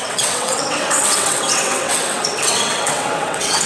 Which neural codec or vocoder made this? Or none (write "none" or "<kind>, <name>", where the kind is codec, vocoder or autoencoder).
vocoder, WaveNeXt